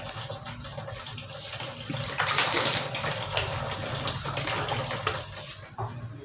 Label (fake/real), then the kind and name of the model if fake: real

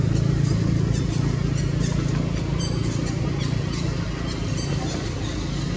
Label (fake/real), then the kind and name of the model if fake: real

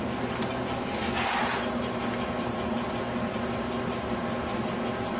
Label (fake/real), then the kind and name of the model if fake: real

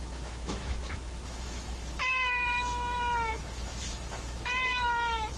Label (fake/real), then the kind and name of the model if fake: fake, autoencoder, DAC-VAE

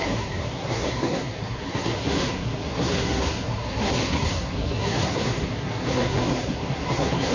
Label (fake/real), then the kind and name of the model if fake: fake, codec, SNAC